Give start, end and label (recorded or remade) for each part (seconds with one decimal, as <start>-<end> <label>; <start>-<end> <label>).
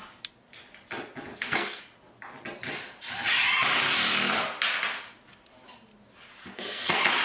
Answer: 0.0-1.3 recorded; 1.3-1.8 remade; 1.8-6.4 recorded; 6.4-7.2 remade